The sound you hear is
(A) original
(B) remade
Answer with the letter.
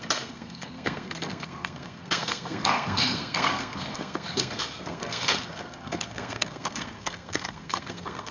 B